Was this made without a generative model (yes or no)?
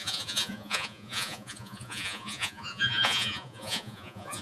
no